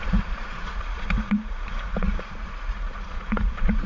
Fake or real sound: fake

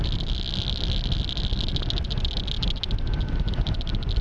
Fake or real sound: real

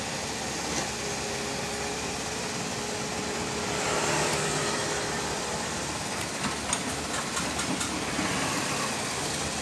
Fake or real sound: real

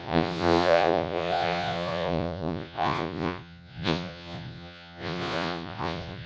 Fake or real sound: fake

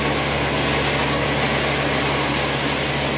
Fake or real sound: real